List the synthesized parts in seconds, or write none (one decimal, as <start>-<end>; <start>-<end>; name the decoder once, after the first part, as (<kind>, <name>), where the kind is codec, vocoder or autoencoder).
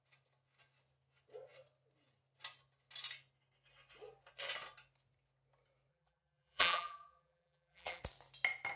5.9-8.0 (vocoder, BigVGAN v2)